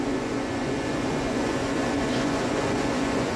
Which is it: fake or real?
fake